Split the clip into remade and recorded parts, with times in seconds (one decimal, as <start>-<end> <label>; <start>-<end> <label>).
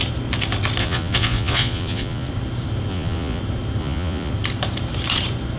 0.0-0.8 recorded; 0.8-2.3 remade; 2.3-2.9 recorded; 2.9-3.4 remade; 3.4-3.8 recorded; 3.8-4.3 remade; 4.3-5.6 recorded